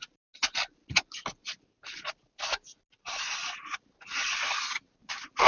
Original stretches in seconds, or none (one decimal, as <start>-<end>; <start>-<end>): 0.0-5.5